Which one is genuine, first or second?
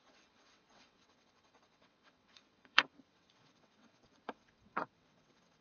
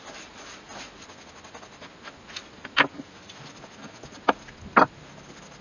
second